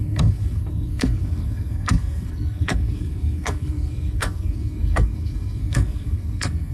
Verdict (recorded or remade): remade